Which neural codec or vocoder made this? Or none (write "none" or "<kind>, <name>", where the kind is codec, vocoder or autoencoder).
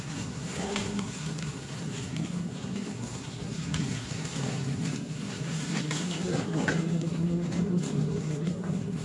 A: codec, SNAC